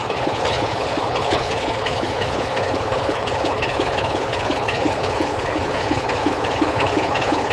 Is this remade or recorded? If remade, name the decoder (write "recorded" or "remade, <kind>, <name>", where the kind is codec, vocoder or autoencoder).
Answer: remade, codec, HILCodec